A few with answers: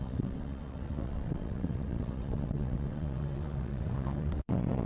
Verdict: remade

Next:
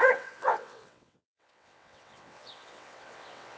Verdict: remade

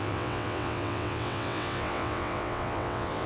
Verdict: remade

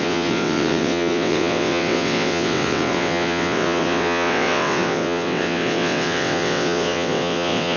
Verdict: remade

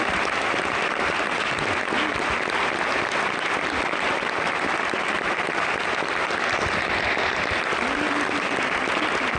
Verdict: recorded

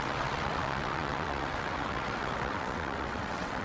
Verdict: remade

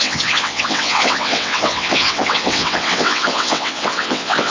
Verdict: remade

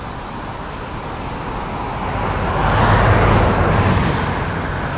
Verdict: recorded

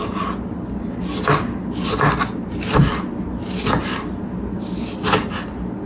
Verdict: recorded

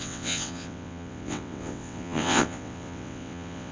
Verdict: remade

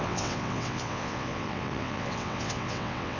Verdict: remade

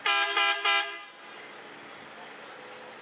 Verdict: recorded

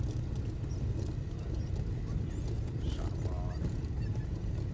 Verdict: recorded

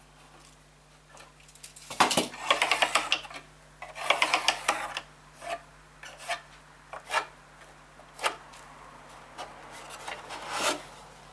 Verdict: recorded